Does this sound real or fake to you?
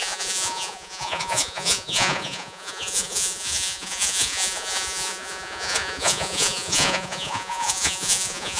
fake